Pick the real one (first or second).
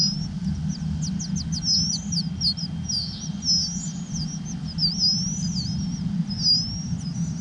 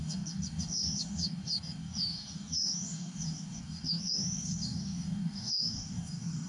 first